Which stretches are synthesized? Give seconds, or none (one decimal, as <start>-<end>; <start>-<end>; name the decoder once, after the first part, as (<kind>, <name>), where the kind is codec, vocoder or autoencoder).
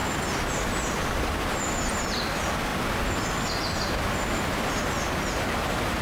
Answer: none